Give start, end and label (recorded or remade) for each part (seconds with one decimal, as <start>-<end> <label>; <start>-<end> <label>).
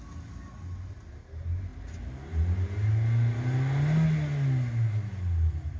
0.0-1.7 recorded; 1.7-2.3 remade; 2.3-5.8 recorded